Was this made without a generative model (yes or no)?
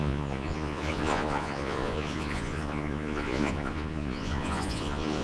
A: no